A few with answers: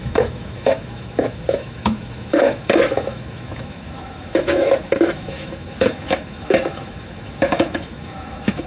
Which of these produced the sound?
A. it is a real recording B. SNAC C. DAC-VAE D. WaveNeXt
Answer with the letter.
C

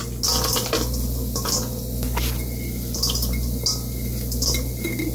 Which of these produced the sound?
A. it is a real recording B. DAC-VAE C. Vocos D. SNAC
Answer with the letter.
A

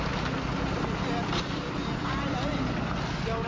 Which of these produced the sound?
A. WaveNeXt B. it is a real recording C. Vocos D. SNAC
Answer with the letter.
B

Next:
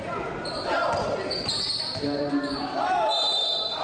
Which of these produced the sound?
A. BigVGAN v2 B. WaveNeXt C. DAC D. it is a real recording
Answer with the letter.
D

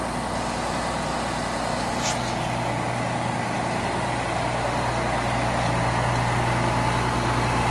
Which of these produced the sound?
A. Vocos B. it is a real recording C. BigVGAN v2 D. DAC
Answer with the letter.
B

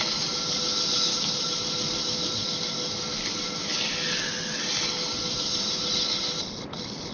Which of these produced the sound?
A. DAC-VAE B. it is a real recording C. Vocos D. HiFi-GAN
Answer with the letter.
B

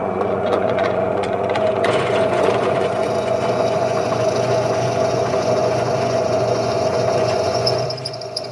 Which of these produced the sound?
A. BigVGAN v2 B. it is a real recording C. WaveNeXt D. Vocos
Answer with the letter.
D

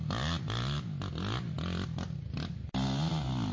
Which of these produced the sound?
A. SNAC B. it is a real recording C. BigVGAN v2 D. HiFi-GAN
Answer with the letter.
B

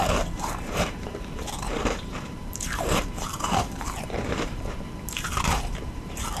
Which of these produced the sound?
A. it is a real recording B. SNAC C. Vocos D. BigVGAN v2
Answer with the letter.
D